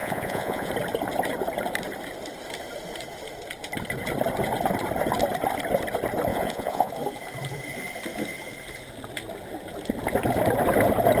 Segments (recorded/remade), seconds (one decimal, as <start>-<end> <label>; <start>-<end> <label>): 0.0-0.7 remade; 0.7-6.3 recorded; 6.3-6.9 remade; 6.9-11.2 recorded